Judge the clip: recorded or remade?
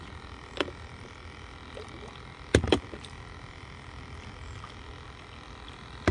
recorded